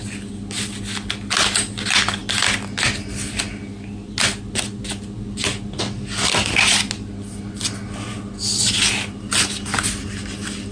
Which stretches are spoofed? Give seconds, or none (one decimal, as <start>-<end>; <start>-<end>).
none